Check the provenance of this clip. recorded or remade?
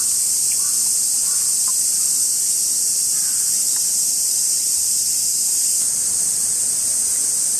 recorded